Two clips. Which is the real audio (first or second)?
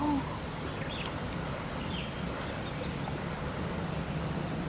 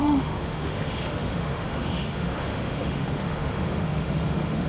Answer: first